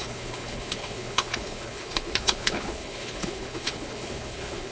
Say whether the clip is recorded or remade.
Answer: remade